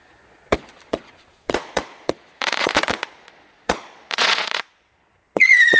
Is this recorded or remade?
remade